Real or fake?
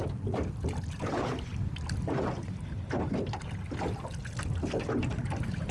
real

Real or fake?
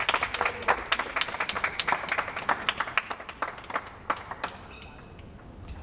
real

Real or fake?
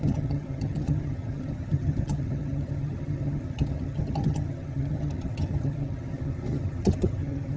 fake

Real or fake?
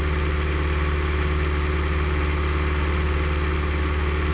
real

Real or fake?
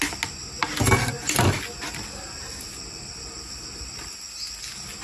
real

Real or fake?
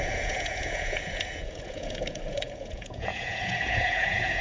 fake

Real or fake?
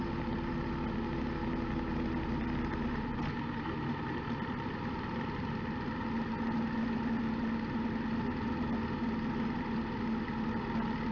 real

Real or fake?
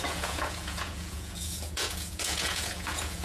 fake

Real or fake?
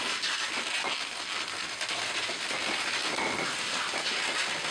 real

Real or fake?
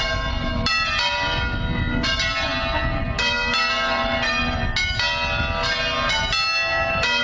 real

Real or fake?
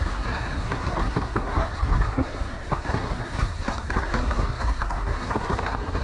fake